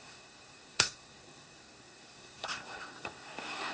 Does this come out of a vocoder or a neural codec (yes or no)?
yes